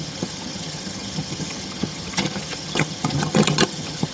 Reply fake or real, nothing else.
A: fake